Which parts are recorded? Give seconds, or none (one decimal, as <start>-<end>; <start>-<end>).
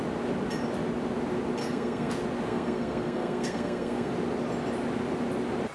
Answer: 0.0-1.6; 2.1-2.5; 4.1-5.7